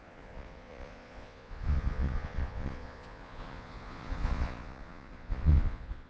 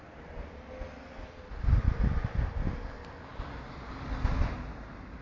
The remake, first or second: first